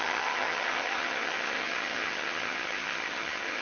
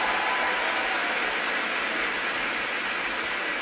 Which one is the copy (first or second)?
first